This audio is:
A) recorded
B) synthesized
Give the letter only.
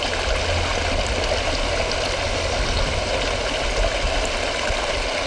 A